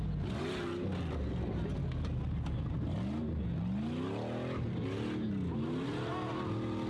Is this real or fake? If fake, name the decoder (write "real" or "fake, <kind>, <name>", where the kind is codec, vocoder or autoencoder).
real